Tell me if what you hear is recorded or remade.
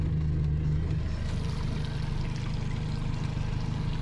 recorded